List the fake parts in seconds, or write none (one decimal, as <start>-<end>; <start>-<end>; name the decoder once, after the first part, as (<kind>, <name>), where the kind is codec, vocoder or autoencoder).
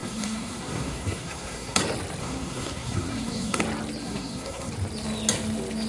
0.0-1.8 (codec, SNAC); 2.2-3.6; 4.0-4.7